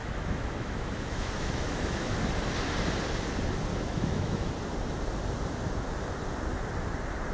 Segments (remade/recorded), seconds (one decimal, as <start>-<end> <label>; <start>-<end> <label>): 0.0-2.2 remade; 2.2-3.7 recorded; 3.7-4.5 remade; 4.5-7.3 recorded